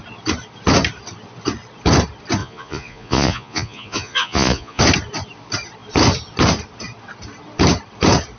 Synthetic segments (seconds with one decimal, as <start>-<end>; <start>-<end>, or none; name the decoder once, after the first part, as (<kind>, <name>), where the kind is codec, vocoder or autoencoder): 2.4-4.8 (vocoder, Vocos)